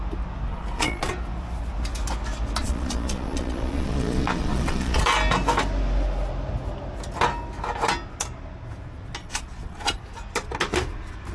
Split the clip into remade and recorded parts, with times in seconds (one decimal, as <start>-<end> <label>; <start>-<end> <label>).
0.0-0.5 recorded; 0.5-1.1 remade; 1.1-2.6 recorded; 2.6-5.0 remade; 5.0-9.2 recorded; 9.2-10.0 remade; 10.0-11.3 recorded